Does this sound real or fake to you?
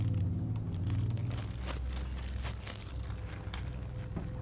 real